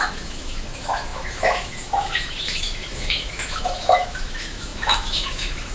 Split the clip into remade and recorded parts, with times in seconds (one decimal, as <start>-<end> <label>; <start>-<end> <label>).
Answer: 0.0-5.7 remade